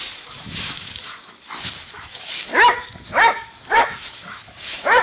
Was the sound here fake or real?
fake